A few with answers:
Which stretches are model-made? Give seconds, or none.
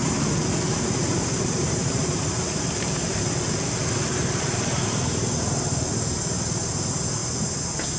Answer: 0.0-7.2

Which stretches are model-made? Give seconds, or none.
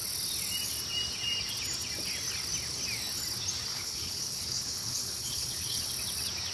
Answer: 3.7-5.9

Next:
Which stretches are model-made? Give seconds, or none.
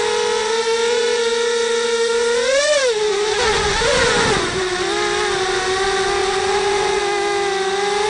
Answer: 0.4-4.7; 6.2-7.0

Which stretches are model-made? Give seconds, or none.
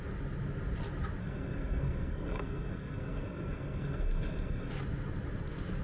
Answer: 1.2-4.7